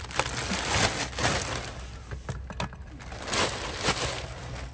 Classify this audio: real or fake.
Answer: real